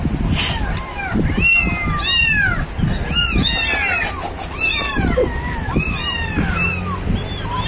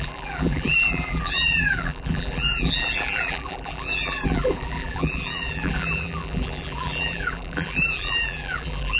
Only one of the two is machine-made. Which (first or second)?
second